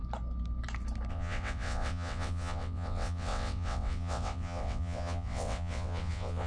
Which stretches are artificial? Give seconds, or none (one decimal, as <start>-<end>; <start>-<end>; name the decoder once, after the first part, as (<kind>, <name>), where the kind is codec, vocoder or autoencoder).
1.1-6.5 (vocoder, WaveNeXt)